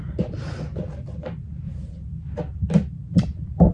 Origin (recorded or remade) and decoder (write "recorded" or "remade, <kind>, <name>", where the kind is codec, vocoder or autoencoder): recorded